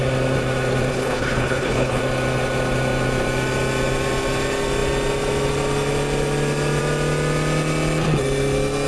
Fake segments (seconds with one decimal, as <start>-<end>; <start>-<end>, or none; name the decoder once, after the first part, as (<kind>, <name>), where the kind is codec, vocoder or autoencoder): 0.9-2.0 (codec, HILCodec)